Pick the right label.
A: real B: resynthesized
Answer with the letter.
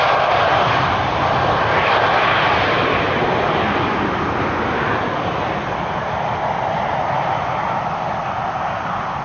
A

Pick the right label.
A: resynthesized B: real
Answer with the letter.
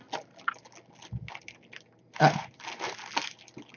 B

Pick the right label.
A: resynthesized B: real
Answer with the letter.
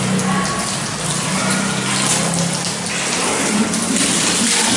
B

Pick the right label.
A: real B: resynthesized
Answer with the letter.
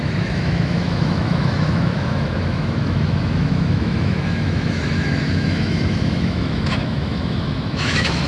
B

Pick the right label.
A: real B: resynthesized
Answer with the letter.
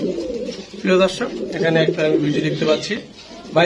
B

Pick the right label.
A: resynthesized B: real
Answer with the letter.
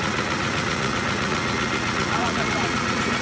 A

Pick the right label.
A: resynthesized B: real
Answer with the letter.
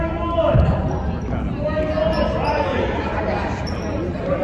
B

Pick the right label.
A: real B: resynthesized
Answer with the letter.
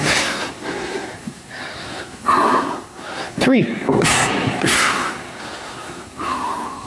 B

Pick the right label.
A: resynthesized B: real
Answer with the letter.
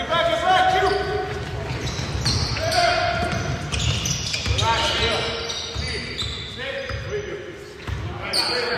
B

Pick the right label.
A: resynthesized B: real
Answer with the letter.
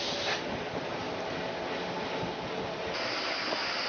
B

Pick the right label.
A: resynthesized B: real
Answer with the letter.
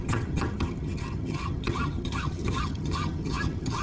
A